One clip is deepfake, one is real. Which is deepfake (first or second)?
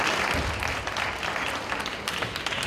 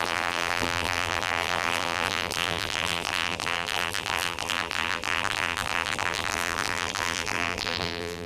second